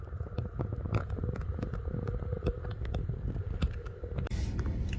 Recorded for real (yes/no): yes